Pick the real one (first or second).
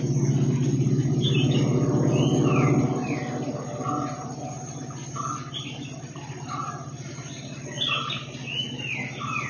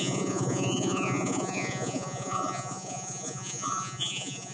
first